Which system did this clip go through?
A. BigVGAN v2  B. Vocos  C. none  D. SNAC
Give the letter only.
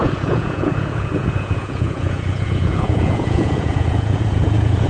B